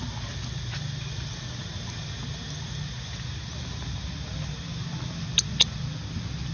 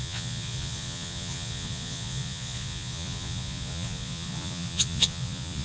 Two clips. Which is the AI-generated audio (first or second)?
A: second